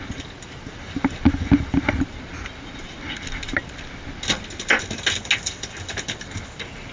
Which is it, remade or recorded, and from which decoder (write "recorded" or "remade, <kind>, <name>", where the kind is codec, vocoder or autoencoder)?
recorded